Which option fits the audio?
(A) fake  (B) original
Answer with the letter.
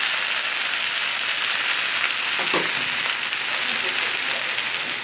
B